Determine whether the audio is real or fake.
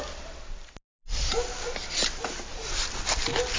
real